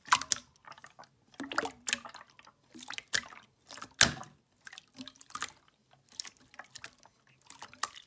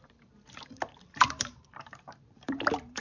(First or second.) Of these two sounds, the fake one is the second